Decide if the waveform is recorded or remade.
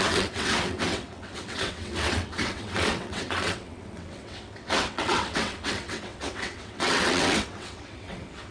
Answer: remade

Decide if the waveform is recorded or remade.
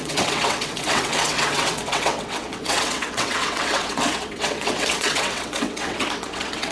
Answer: remade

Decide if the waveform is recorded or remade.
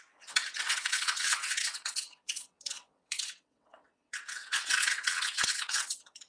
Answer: remade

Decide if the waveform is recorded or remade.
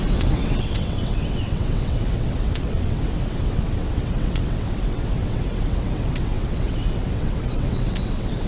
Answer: remade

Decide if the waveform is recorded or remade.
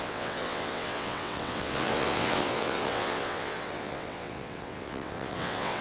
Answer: remade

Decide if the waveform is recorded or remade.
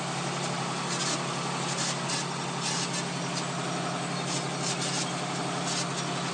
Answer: recorded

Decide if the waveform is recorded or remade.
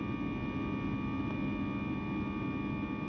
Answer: recorded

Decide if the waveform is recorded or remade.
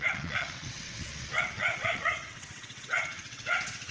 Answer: remade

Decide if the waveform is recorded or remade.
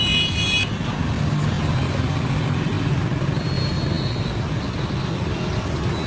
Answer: recorded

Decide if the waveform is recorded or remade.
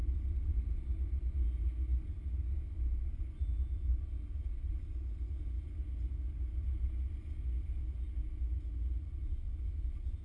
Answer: recorded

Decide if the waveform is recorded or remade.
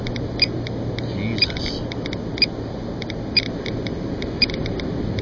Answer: recorded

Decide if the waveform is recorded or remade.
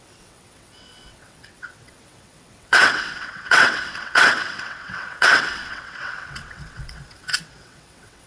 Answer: remade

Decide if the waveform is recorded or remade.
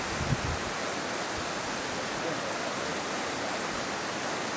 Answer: recorded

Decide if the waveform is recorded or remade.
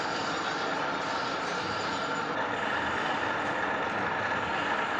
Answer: recorded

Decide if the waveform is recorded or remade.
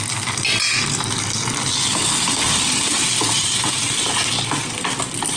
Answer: recorded